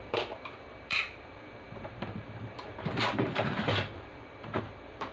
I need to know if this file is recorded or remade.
remade